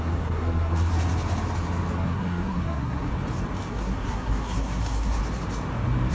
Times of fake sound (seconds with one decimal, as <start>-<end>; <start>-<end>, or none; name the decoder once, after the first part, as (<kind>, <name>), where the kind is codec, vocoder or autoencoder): 0.0-0.9 (codec, SNAC); 2.0-3.1; 3.7-5.2